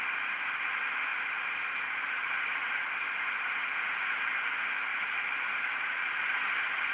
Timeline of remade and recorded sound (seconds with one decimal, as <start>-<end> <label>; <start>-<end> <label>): 0.0-4.9 recorded; 4.9-6.9 remade